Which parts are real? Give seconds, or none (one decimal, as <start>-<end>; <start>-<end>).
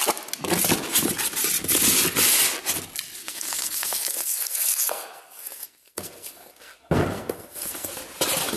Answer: 0.0-3.2; 7.9-8.6